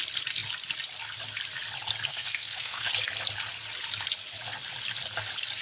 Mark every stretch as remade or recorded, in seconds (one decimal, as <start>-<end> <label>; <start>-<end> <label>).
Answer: 0.0-2.1 recorded; 2.1-2.9 remade; 2.9-5.6 recorded